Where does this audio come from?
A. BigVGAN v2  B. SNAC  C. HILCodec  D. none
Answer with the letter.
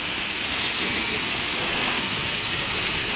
B